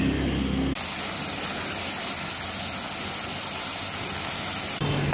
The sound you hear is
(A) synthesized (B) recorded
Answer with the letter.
B